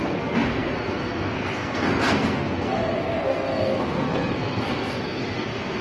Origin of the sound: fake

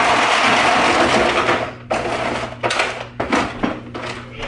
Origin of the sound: real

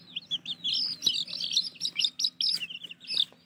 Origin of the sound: real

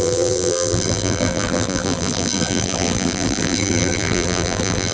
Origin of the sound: fake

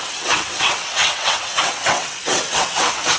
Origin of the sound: fake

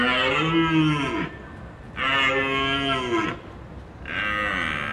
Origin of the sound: real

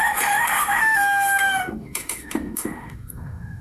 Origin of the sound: fake